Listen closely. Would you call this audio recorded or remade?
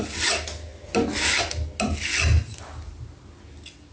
recorded